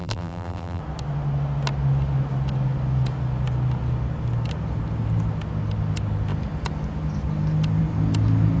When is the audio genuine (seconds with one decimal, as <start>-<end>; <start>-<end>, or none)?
0.8-8.6